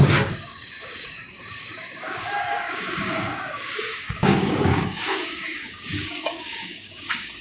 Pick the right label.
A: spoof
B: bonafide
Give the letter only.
A